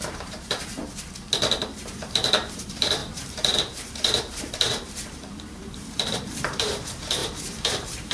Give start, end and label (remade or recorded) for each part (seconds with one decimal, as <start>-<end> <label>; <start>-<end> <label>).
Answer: 0.0-0.8 remade; 0.8-1.7 recorded; 1.7-8.1 remade